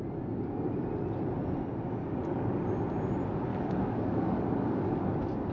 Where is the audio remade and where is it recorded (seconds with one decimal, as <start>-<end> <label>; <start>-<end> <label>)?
0.0-2.0 recorded; 2.0-2.6 remade; 2.6-3.5 recorded; 3.5-5.0 remade; 5.0-5.5 recorded